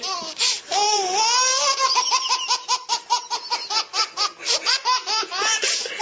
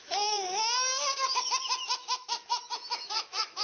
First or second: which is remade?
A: second